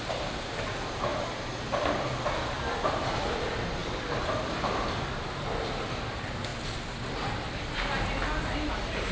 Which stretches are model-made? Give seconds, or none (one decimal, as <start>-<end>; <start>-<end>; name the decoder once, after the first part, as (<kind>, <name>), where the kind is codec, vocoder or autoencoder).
none